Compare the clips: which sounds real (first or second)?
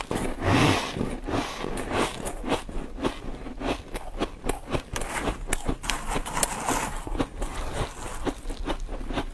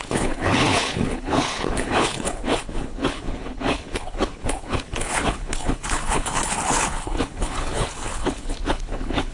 first